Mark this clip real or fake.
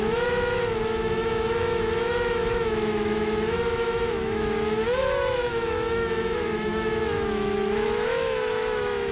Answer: fake